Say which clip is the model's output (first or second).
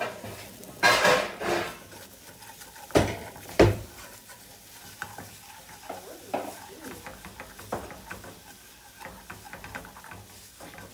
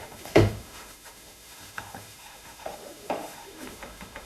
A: second